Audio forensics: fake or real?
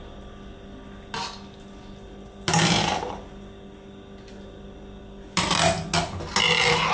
real